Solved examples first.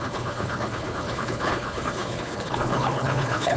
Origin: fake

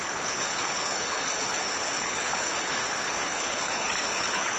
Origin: fake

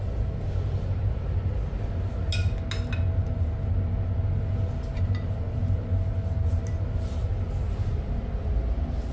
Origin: real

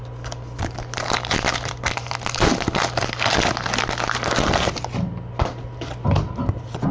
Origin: real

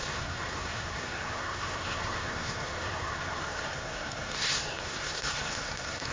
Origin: fake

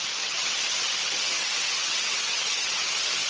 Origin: fake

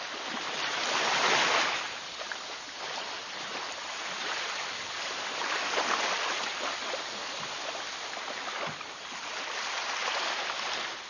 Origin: real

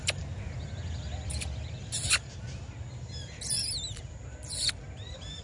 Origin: fake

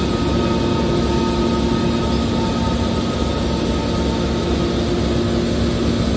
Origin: real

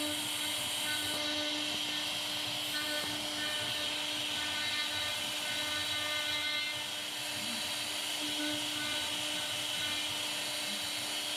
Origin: real